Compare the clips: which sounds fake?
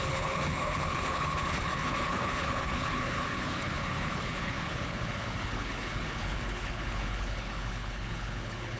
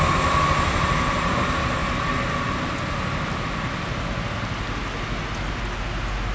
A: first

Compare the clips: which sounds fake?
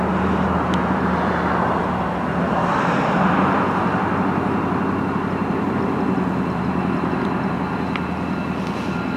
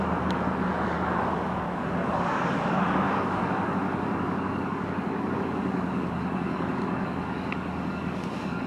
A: second